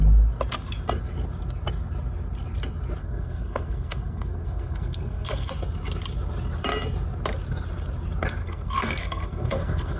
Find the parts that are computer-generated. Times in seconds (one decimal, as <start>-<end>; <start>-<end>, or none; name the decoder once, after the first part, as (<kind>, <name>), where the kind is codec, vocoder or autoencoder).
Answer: 3.0-5.5 (codec, SNAC); 8.4-10.0